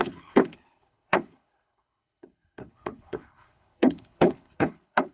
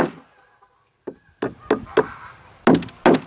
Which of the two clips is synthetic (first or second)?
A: first